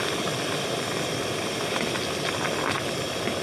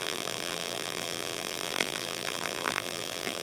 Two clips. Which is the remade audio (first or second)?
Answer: second